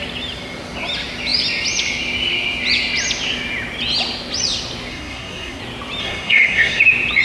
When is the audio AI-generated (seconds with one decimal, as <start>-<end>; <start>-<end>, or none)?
4.9-5.6; 6.0-6.8